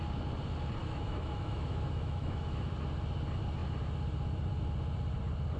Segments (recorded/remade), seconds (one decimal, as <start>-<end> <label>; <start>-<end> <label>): 0.0-0.8 recorded; 0.8-2.7 remade; 2.7-5.6 recorded